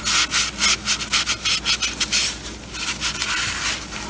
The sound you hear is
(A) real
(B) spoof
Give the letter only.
A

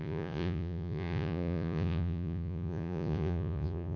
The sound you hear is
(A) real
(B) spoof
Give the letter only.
B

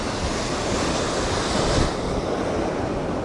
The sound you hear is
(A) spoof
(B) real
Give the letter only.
B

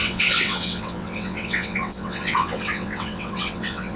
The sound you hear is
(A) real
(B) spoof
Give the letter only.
B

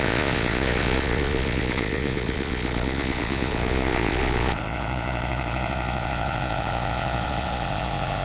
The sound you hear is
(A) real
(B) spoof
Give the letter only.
B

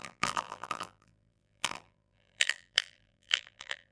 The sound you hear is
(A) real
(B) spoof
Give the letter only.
B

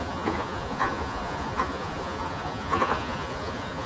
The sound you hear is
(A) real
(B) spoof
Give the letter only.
B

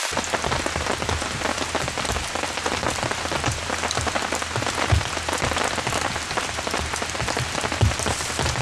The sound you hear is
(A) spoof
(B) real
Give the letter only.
B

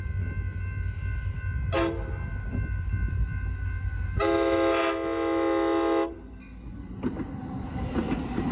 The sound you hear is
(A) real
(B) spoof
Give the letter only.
A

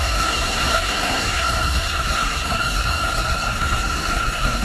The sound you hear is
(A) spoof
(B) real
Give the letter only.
A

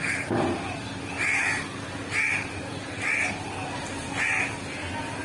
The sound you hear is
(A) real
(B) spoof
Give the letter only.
A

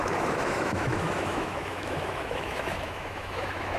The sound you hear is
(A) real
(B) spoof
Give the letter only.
B